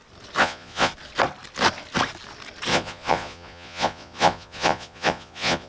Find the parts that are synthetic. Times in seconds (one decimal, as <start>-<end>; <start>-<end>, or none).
0.4-0.9; 2.7-5.7